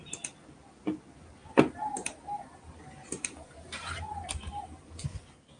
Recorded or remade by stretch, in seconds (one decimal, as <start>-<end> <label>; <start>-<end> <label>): 0.0-1.4 recorded; 1.4-4.8 remade; 4.8-5.6 recorded